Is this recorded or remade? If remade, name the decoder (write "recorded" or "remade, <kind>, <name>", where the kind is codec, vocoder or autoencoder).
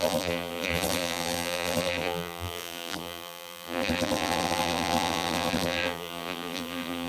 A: remade, vocoder, BigVGAN v2